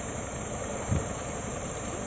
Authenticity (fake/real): fake